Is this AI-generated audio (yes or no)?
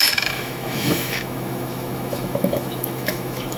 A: yes